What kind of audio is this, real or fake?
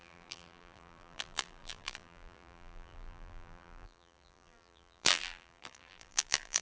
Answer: fake